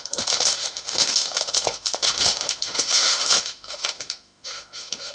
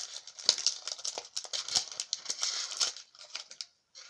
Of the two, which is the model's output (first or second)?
first